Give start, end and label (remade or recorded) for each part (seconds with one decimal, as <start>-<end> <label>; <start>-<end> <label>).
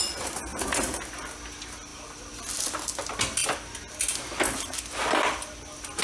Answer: 0.0-6.0 recorded